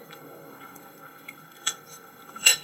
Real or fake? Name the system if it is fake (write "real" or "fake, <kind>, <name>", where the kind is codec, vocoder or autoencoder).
fake, codec, SNAC